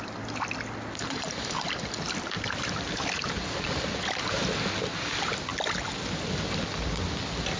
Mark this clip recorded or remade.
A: recorded